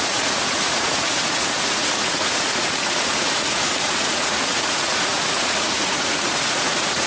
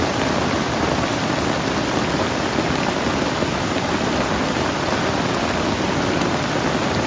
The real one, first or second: second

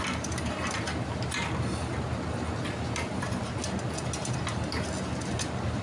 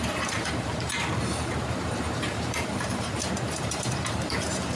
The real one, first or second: first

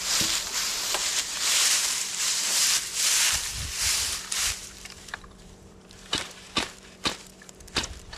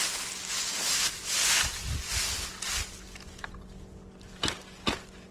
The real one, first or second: second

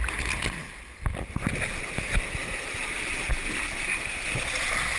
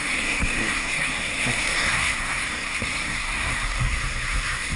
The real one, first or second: first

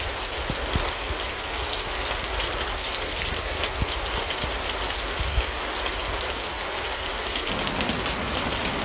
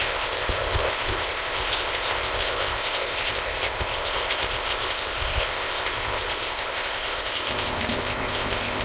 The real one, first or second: first